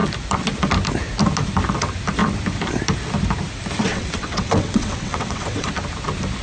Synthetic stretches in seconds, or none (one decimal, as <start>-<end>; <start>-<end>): 3.8-5.7